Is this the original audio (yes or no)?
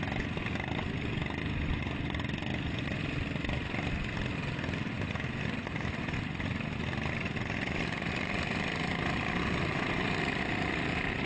yes